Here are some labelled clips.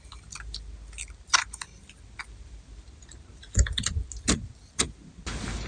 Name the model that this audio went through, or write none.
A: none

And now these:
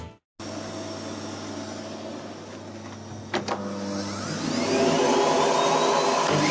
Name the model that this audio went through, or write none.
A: none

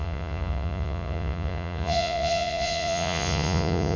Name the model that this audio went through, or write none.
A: vocoder, Vocos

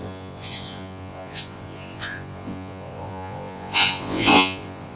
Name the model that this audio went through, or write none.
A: vocoder, Vocos